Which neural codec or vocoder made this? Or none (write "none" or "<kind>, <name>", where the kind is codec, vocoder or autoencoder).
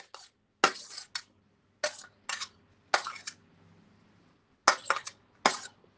none